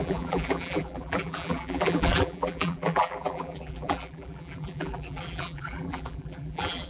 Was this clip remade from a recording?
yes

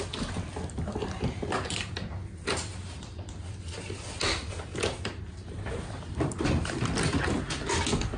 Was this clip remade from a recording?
no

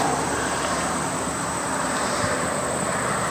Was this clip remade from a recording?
yes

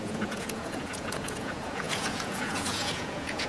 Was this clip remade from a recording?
yes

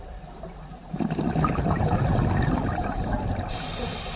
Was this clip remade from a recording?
no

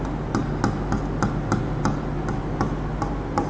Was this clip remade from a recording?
no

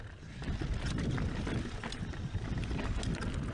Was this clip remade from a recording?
no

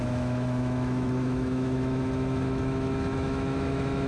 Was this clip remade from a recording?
yes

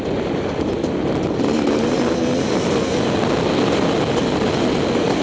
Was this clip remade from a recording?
no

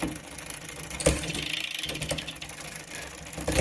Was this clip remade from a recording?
no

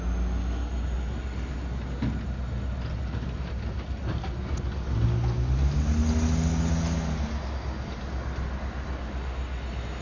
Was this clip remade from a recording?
no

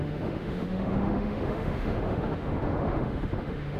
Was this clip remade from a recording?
yes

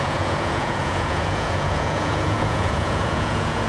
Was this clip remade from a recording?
yes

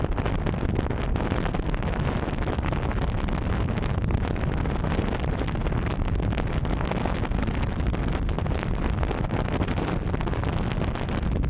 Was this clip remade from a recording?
yes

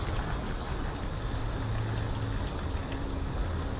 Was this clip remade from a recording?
no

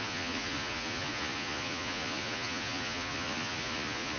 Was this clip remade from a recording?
yes